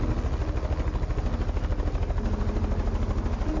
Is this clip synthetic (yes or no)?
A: no